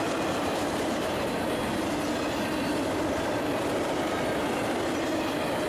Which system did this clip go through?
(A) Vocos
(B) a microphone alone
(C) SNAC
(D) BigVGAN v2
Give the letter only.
D